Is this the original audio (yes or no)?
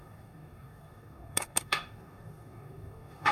no